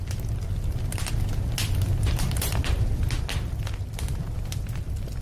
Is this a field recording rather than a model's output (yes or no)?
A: yes